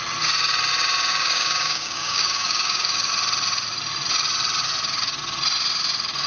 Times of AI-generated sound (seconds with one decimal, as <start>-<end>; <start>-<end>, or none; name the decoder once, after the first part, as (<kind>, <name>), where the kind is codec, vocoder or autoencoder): 1.1-3.1 (codec, DAC)